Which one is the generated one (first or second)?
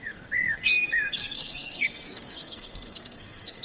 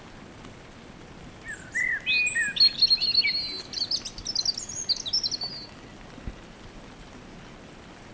first